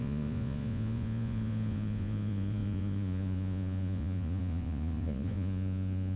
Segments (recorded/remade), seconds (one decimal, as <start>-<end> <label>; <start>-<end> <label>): 0.0-6.2 remade